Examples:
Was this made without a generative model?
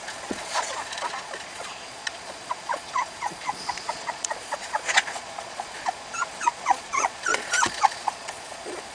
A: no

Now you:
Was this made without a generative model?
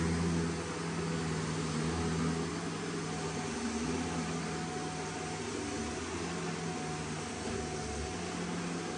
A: yes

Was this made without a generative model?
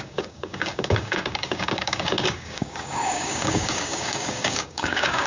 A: no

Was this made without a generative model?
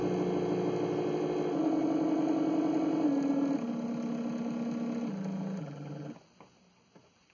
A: yes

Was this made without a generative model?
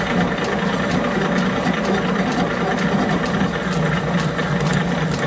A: yes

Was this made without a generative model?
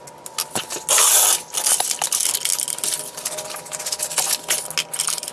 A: yes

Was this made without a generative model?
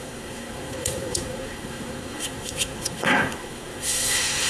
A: no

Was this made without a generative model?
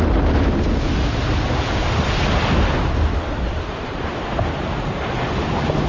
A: yes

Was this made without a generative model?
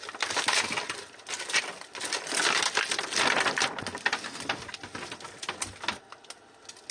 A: yes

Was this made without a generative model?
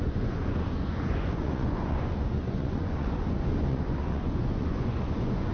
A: no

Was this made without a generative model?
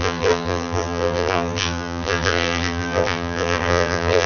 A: no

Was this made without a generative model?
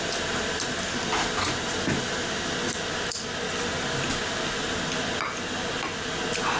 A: yes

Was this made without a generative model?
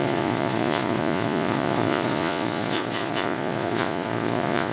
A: no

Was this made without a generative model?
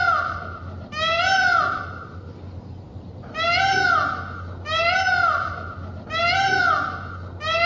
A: yes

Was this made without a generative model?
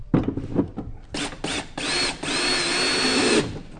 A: yes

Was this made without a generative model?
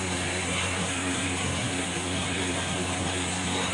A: no